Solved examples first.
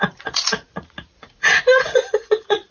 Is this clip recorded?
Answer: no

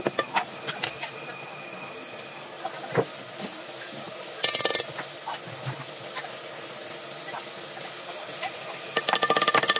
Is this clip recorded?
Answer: yes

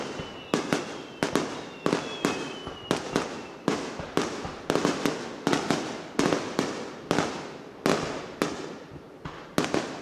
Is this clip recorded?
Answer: yes